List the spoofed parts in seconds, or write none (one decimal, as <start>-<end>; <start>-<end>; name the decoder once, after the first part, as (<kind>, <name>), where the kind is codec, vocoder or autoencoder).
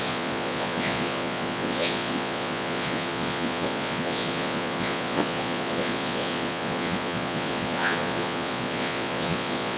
0.0-9.8 (vocoder, Vocos)